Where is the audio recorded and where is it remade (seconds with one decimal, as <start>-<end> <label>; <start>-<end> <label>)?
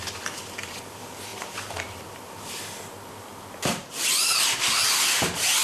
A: 0.0-5.6 recorded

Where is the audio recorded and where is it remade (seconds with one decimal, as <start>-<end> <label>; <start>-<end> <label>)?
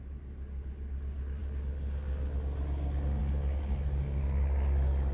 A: 0.0-5.1 recorded